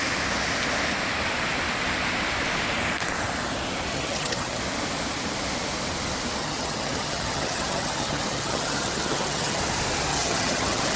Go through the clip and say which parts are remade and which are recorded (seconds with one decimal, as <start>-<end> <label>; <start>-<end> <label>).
0.0-3.9 recorded; 3.9-4.6 remade; 4.6-6.4 recorded; 6.4-9.6 remade; 9.6-10.1 recorded; 10.1-11.0 remade